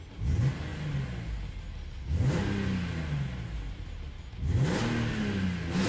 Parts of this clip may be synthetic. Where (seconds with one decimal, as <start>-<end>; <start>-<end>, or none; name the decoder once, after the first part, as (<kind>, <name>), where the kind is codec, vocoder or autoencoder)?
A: none